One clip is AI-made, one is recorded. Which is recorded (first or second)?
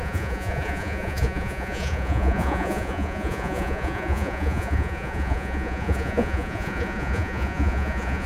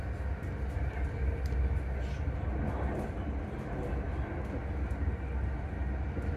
second